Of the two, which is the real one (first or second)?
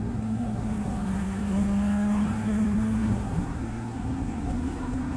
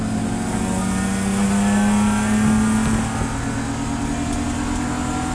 second